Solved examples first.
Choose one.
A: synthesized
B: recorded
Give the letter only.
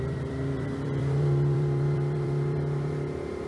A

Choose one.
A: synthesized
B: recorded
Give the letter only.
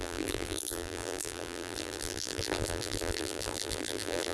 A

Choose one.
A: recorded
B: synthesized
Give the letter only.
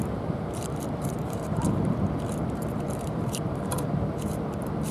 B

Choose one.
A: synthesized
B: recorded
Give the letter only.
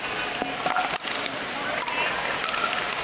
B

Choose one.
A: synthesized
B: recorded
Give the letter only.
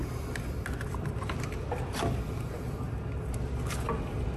B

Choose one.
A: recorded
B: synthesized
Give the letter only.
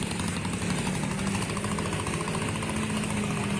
A